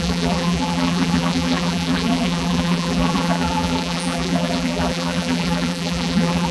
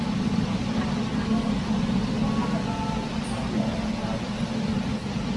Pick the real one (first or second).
second